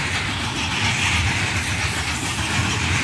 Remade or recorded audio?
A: recorded